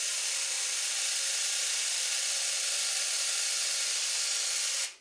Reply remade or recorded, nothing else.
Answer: remade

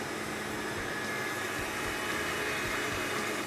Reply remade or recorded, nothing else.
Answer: recorded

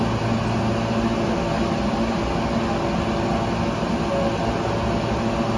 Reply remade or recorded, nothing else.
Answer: recorded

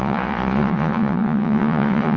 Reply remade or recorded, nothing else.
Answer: remade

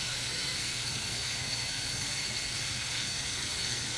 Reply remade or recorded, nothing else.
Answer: remade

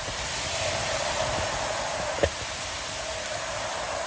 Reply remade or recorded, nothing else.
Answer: recorded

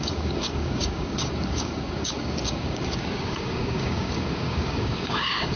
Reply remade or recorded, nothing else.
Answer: remade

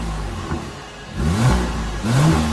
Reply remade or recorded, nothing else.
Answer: recorded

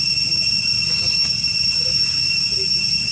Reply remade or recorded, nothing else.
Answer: recorded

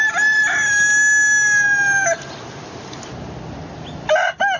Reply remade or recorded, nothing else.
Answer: recorded